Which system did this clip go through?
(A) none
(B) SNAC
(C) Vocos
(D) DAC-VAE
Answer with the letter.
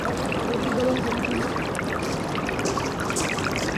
A